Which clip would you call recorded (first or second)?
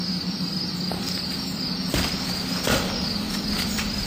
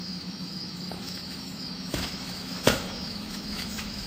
first